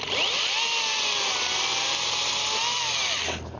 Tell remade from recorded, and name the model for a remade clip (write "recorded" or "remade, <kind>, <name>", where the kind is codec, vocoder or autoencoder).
recorded